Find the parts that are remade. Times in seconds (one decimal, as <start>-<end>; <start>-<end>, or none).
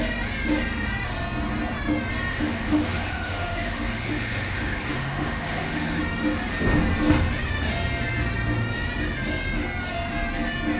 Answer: 2.3-6.0